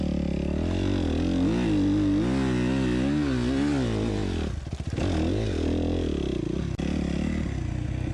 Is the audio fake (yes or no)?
no